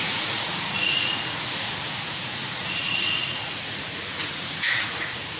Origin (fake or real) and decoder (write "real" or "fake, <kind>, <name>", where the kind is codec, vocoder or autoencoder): fake, vocoder, Vocos